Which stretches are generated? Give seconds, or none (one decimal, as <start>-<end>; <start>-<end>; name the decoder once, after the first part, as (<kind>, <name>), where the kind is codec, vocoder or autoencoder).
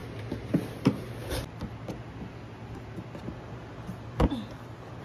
none